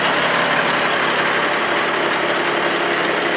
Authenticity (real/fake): real